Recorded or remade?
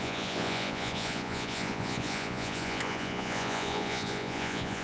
remade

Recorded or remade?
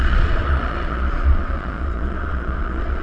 remade